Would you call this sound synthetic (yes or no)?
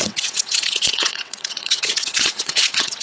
yes